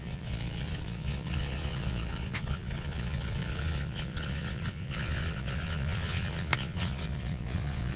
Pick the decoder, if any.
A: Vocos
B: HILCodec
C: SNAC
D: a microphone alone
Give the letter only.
A